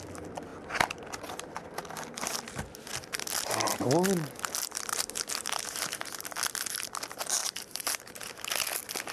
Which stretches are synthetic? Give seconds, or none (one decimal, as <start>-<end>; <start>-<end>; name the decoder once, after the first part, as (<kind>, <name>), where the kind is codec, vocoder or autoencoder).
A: 7.4-8.4 (vocoder, BigVGAN v2)

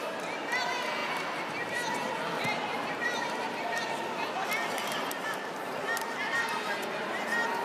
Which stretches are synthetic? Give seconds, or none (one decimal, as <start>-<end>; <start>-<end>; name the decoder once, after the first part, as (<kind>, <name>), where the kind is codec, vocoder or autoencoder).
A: 4.8-6.7 (vocoder, BigVGAN v2)

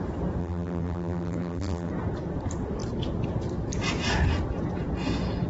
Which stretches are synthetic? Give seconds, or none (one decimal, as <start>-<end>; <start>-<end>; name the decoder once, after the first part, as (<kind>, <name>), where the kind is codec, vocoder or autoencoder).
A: 0.4-1.9 (vocoder, BigVGAN v2)